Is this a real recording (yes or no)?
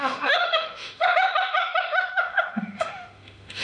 no